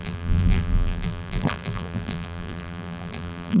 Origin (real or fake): fake